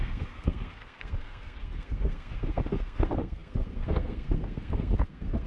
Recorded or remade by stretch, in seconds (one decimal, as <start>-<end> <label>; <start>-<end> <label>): 0.0-5.5 remade